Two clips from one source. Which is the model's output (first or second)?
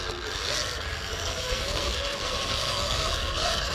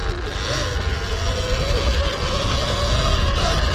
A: first